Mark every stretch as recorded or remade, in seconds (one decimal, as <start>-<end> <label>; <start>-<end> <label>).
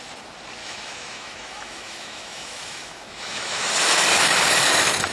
0.0-0.6 recorded; 0.6-3.7 remade; 3.7-5.1 recorded